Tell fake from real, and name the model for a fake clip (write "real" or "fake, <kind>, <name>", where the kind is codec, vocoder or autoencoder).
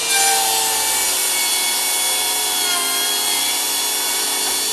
real